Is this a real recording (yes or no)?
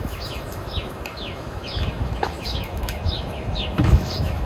no